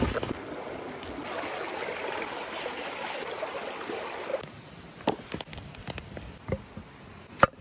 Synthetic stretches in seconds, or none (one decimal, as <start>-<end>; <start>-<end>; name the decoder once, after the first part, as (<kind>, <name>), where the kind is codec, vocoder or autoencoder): none